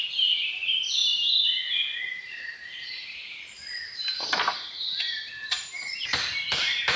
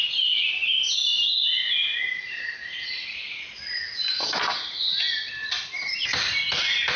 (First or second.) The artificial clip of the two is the first